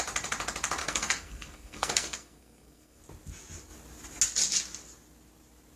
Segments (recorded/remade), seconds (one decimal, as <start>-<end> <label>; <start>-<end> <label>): 0.0-0.8 recorded; 0.8-3.0 remade; 3.0-5.8 recorded

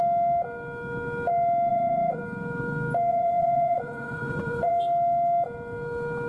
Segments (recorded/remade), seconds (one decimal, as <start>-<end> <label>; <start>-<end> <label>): 0.0-1.7 recorded; 1.7-2.2 remade; 2.2-3.1 recorded; 3.1-4.7 remade; 4.7-6.3 recorded

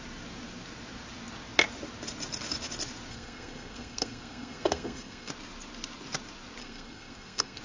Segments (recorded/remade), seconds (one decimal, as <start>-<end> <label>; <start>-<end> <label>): 0.0-3.1 recorded; 3.1-5.3 remade; 5.3-6.6 recorded; 6.6-7.6 remade

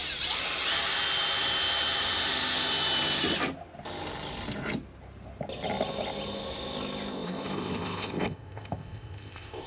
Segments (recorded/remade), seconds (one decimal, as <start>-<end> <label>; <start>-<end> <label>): 0.0-7.1 recorded; 7.1-9.7 remade

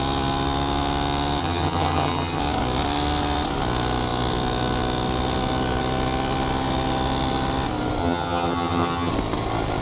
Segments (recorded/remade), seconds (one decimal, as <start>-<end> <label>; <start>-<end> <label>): 0.0-1.4 recorded; 1.4-2.4 remade; 2.4-8.0 recorded; 8.0-9.1 remade; 9.1-9.8 recorded